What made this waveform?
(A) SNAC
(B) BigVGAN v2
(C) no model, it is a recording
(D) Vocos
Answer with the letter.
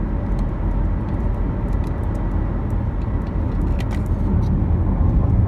C